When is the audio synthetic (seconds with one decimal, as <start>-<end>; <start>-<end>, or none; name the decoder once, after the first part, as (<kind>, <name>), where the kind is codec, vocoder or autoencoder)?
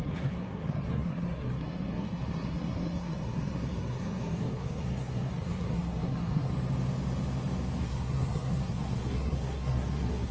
0.0-6.5 (codec, SNAC); 7.8-10.3